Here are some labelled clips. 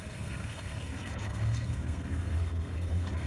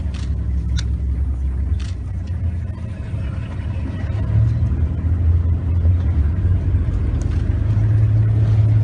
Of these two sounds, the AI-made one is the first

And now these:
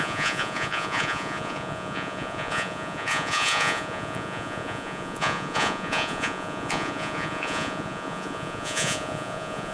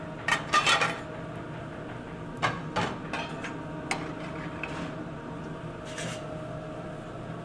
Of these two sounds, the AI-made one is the first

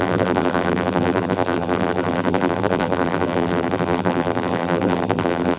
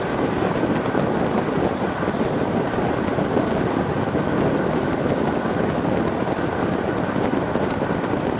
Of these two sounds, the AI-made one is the first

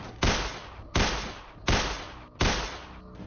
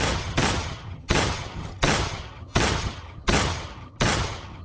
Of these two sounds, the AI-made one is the second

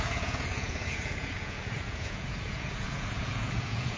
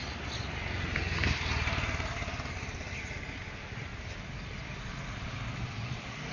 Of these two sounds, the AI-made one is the first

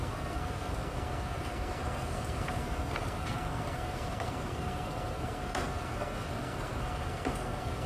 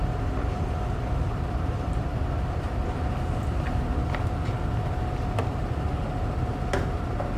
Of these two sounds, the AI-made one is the first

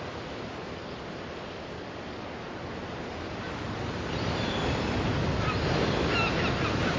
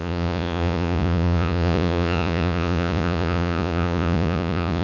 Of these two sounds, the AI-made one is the second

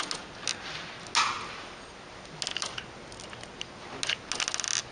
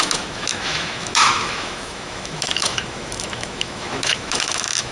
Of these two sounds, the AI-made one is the second